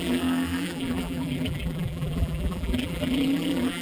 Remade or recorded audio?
remade